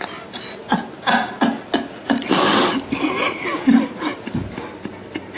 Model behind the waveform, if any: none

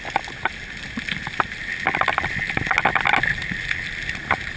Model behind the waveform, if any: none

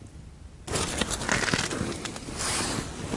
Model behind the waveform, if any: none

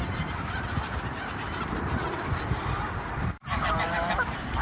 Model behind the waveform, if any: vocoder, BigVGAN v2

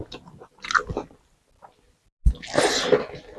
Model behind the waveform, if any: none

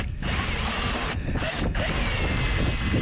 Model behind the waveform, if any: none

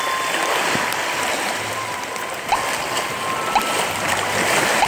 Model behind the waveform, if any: vocoder, BigVGAN v2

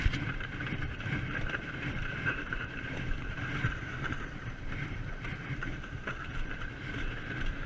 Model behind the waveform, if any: vocoder, BigVGAN v2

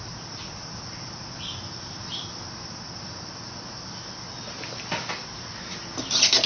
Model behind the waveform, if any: none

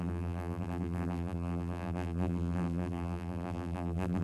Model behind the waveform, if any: vocoder, BigVGAN v2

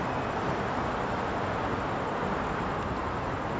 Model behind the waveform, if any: none